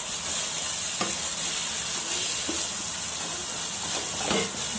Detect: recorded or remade recorded